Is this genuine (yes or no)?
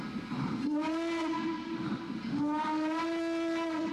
yes